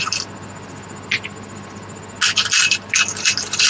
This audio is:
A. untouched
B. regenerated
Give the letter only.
A